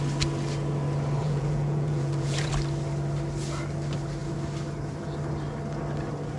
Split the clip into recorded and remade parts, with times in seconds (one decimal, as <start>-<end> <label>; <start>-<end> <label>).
0.0-1.2 recorded; 1.2-2.5 remade; 2.5-6.4 recorded